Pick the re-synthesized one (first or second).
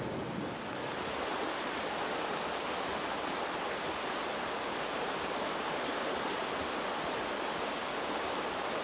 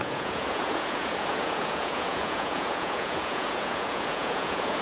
second